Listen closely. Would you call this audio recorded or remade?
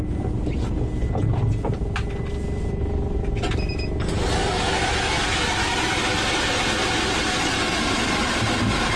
recorded